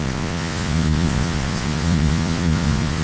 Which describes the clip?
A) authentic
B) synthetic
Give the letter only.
B